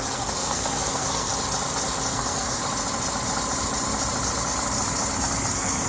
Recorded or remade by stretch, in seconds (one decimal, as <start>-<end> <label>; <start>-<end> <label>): 0.0-1.3 remade; 1.3-2.1 recorded; 2.1-2.6 remade; 2.6-5.5 recorded; 5.5-5.9 remade

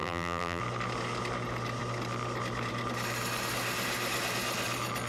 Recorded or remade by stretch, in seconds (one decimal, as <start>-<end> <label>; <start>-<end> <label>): 0.0-0.6 remade; 0.6-5.1 recorded